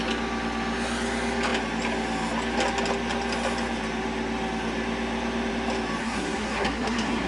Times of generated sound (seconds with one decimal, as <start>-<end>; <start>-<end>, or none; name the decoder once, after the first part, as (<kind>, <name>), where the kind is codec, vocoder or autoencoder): 6.0-7.3 (codec, SNAC)